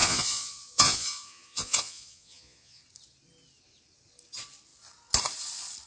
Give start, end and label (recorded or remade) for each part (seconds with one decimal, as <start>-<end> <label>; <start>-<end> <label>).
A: 0.0-2.8 remade; 2.8-5.9 recorded